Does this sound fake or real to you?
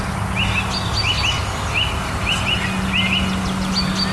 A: real